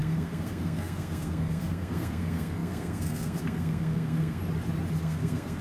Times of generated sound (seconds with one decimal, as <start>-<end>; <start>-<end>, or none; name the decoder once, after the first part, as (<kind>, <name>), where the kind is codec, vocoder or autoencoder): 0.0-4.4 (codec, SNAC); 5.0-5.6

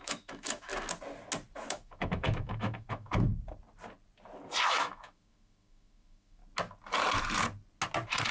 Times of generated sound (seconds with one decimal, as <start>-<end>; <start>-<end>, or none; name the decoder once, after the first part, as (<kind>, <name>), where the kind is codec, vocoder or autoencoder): 0.0-0.7 (autoencoder, DAC-VAE); 1.7-3.3; 4.7-6.4

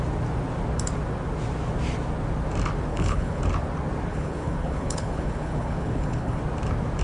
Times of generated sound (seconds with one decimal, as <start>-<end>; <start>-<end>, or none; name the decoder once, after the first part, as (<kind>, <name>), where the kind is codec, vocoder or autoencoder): 2.9-3.4 (codec, HILCodec); 4.1-6.4

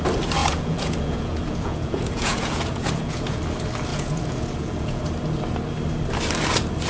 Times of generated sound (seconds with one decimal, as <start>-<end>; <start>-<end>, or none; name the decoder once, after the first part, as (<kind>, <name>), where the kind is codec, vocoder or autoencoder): 0.4-3.4 (vocoder, Vocos); 3.9-5.0

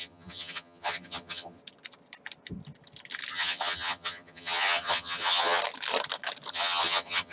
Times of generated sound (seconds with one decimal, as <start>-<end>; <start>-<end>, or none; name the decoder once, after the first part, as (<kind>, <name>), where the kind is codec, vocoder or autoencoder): 0.0-1.6 (vocoder, HiFi-GAN); 3.3-5.6; 6.5-7.3

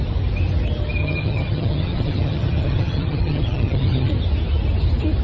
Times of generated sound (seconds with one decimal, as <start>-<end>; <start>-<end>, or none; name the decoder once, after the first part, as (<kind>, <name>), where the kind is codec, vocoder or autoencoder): 1.0-4.1 (vocoder, HiFi-GAN)

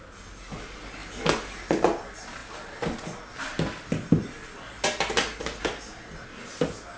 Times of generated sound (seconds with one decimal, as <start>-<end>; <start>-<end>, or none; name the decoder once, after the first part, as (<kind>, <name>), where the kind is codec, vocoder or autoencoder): none